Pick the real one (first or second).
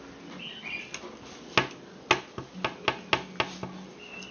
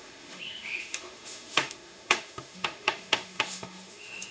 first